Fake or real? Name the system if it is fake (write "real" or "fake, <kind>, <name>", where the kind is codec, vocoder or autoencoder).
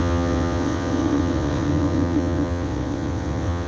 fake, vocoder, WaveNeXt